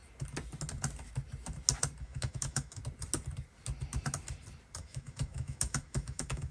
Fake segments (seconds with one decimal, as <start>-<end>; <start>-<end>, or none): 2.0-2.8; 4.8-6.5